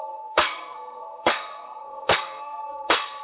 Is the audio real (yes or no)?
no